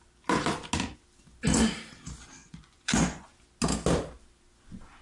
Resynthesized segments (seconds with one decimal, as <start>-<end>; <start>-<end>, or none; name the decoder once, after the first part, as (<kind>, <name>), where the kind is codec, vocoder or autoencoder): 2.4-3.3 (vocoder, Vocos)